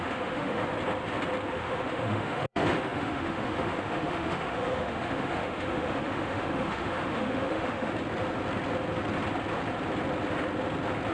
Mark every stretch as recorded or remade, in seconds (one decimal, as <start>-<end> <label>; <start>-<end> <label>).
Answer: 0.0-0.6 remade; 0.6-1.5 recorded; 1.5-7.9 remade; 7.9-11.1 recorded